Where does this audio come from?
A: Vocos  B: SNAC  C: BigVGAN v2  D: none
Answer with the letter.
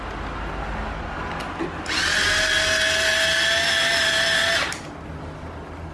D